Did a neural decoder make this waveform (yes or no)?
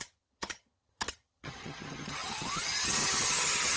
yes